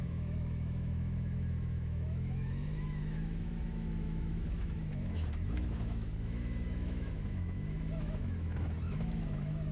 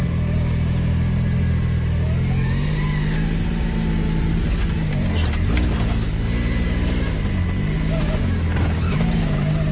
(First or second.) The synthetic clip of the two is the first